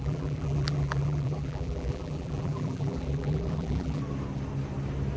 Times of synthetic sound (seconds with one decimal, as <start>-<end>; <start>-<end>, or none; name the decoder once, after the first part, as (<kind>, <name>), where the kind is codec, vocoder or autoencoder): 0.0-4.0 (vocoder, BigVGAN v2)